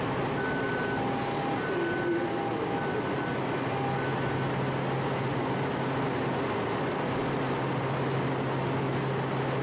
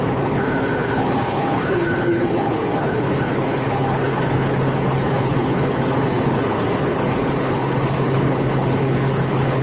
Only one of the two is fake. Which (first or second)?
second